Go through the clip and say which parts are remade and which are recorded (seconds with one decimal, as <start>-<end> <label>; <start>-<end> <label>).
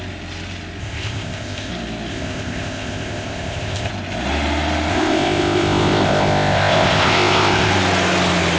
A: 0.0-0.8 recorded; 0.8-1.7 remade; 1.7-2.1 recorded; 2.1-3.9 remade; 3.9-4.9 recorded; 4.9-7.7 remade; 7.7-8.6 recorded